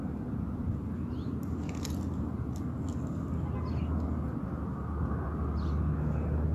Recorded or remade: recorded